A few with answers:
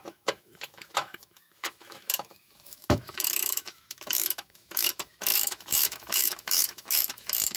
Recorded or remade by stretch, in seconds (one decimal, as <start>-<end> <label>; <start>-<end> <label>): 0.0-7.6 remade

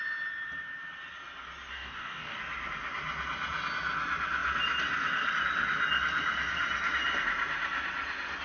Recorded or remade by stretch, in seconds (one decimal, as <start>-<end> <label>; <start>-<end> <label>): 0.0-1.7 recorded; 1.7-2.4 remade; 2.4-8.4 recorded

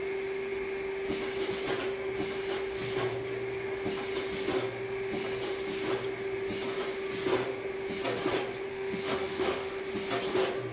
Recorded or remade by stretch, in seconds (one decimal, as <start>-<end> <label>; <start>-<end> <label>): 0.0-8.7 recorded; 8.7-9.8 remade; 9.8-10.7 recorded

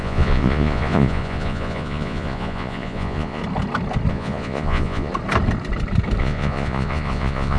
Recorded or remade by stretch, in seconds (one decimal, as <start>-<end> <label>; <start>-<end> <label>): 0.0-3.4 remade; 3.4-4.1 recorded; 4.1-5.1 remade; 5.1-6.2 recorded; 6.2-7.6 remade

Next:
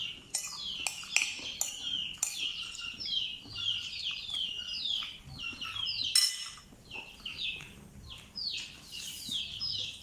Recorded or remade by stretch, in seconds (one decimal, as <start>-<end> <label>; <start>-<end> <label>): 0.0-7.2 recorded; 7.2-7.9 remade; 7.9-10.0 recorded